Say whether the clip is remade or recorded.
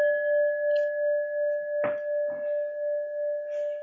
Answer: recorded